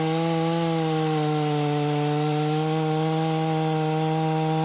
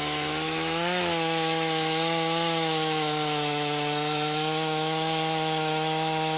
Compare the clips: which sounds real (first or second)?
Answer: first